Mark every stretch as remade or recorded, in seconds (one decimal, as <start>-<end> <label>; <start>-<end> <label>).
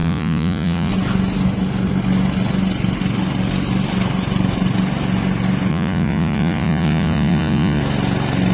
0.0-0.9 remade; 0.9-5.7 recorded; 5.7-7.8 remade; 7.8-8.5 recorded